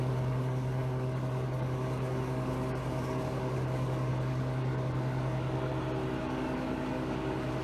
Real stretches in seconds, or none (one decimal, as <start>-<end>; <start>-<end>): 5.7-6.2